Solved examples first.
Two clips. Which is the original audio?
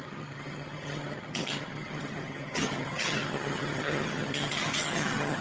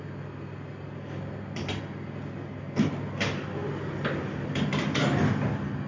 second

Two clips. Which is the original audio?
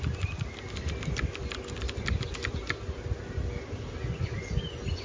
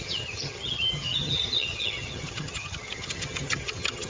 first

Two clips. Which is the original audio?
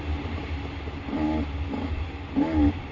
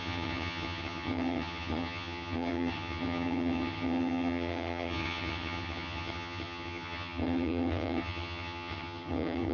first